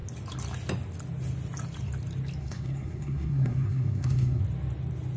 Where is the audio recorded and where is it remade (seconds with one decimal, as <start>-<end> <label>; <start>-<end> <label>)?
0.0-2.4 recorded; 2.4-4.4 remade; 4.4-5.2 recorded